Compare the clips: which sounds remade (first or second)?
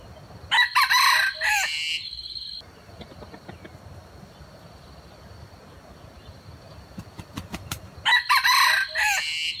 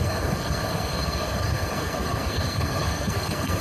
second